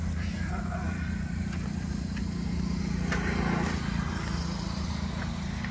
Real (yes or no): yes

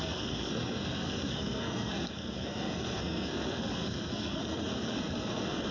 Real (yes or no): no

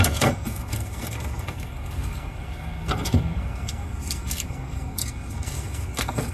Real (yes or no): no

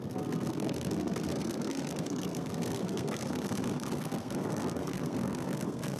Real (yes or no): no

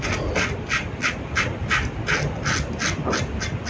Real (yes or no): yes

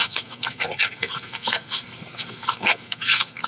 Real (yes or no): no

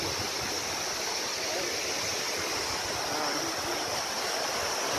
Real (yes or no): yes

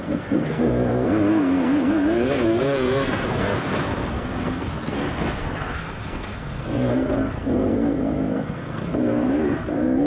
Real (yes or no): no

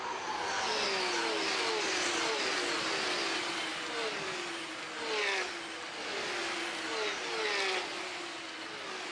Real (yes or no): yes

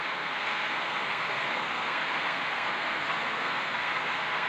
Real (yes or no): no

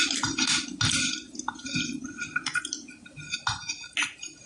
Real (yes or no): yes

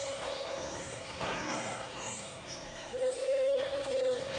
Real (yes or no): no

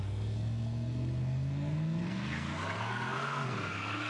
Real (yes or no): no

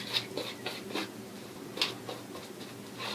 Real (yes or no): yes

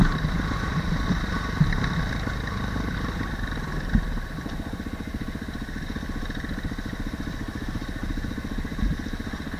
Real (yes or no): yes